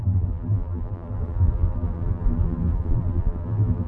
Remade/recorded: remade